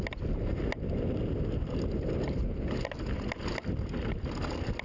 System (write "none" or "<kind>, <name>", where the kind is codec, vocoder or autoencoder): none